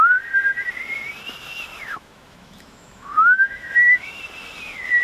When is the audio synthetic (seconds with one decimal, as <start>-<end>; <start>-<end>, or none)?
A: 1.7-4.2